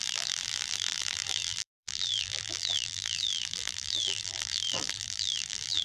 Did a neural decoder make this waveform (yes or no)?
yes